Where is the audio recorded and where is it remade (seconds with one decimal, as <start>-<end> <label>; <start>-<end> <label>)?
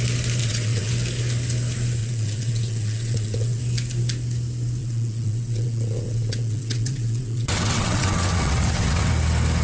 0.0-0.4 recorded; 0.4-0.9 remade; 0.9-2.0 recorded; 2.0-3.6 remade; 3.6-4.8 recorded; 4.8-9.1 remade; 9.1-9.6 recorded